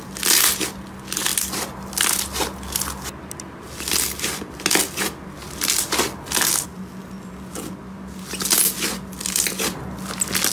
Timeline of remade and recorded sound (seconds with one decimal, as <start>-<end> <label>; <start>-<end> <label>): 0.0-10.5 recorded